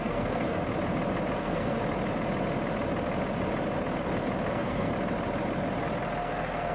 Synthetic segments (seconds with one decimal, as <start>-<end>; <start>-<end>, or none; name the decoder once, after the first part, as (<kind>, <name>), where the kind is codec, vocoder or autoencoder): 0.0-0.6 (codec, SNAC); 1.4-1.8; 4.5-4.9; 6.2-6.7